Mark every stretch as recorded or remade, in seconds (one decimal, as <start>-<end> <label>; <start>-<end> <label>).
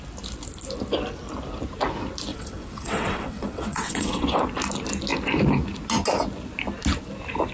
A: 0.0-2.3 recorded; 2.3-4.4 remade; 4.4-7.5 recorded